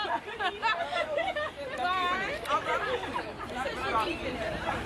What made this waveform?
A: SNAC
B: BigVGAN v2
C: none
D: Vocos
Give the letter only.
C